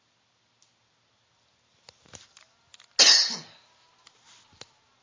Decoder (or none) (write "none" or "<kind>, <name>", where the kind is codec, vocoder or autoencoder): none